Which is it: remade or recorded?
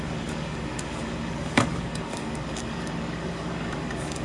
remade